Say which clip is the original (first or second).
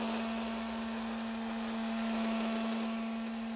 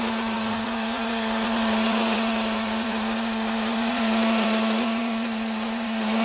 first